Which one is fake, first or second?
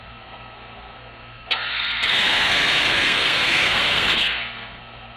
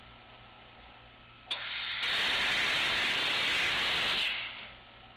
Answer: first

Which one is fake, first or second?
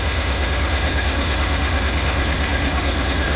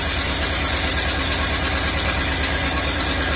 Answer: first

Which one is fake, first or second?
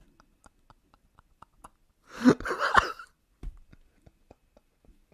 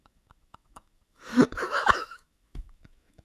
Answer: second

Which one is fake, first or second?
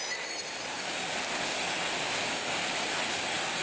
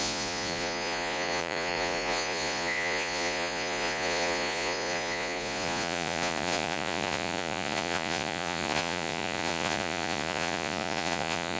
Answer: second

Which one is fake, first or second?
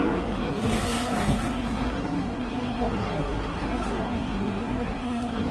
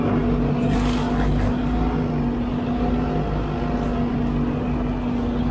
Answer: first